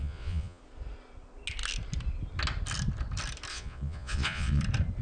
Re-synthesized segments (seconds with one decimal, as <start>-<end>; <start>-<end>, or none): 0.0-0.6; 3.5-4.6